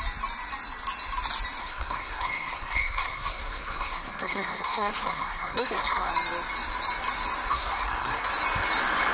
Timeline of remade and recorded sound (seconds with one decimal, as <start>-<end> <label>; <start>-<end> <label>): 0.0-1.6 recorded; 1.6-6.1 remade; 6.1-7.5 recorded; 7.5-8.3 remade; 8.3-9.1 recorded